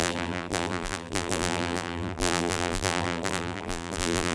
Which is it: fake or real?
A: fake